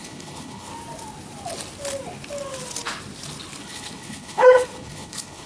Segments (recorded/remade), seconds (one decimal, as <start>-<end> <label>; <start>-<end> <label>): 0.0-0.7 remade; 0.7-3.6 recorded; 3.6-5.5 remade